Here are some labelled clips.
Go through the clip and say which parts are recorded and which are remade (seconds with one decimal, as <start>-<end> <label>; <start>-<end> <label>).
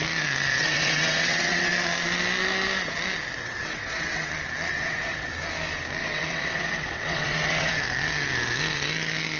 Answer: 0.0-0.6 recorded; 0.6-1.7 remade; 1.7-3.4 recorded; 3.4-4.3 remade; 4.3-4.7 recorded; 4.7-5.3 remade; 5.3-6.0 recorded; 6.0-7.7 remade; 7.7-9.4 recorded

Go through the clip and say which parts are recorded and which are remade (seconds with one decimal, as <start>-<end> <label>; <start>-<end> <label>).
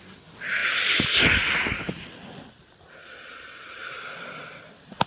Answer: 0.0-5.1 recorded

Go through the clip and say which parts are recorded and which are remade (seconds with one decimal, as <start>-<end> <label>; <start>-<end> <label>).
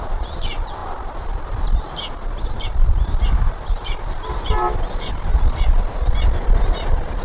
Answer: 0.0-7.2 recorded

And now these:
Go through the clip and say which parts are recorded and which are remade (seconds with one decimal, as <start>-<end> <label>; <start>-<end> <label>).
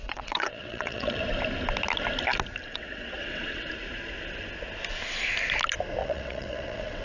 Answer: 0.0-1.2 remade; 1.2-2.7 recorded; 2.7-3.7 remade; 3.7-6.0 recorded; 6.0-7.0 remade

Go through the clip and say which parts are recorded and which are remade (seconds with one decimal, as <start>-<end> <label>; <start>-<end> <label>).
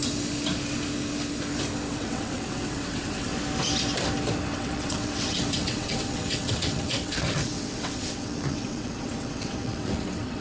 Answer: 0.0-1.9 recorded; 1.9-3.3 remade; 3.3-4.5 recorded; 4.5-10.4 remade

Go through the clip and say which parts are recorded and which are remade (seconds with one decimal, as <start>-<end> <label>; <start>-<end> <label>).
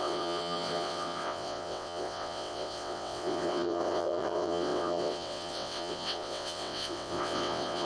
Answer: 0.0-7.9 remade